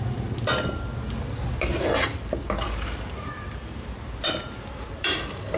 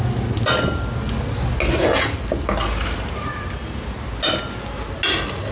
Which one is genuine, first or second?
second